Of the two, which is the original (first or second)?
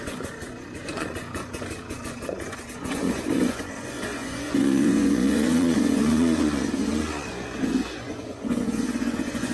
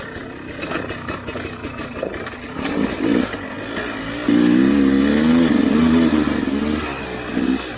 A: second